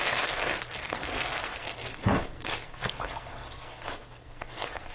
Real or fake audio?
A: fake